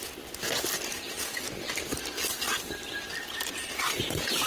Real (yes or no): yes